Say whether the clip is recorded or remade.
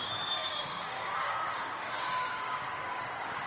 remade